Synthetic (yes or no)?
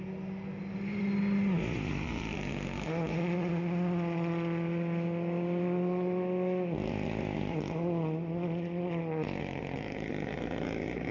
no